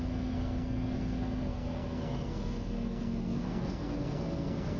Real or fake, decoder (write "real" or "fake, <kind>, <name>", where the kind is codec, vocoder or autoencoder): fake, codec, SNAC